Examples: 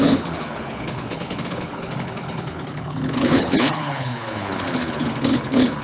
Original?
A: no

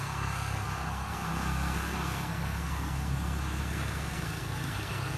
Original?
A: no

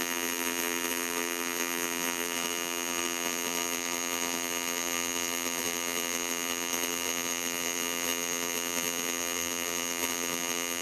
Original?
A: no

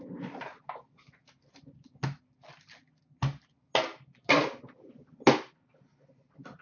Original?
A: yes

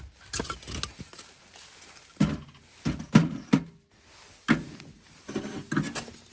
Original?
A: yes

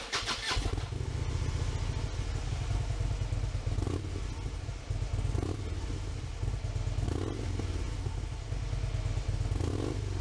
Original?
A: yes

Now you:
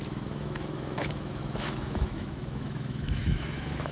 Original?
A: no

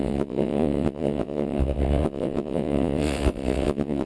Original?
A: no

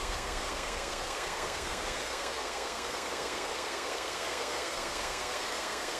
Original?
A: no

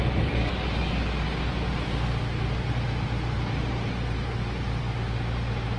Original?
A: yes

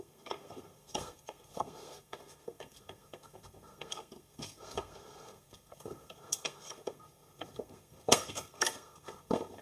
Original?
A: no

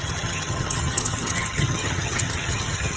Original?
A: no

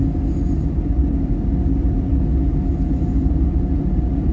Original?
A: yes